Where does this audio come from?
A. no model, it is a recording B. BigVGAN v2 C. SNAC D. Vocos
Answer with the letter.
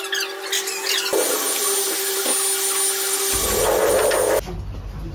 A